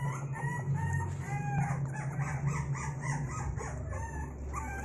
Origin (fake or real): real